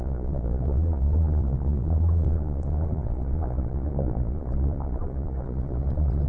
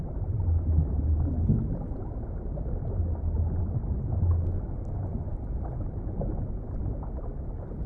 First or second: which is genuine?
second